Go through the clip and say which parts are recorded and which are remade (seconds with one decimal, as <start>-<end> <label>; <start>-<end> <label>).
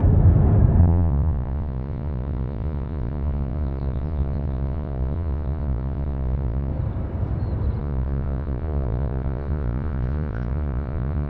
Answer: 0.0-0.8 recorded; 0.8-6.7 remade; 6.7-7.8 recorded; 7.8-11.3 remade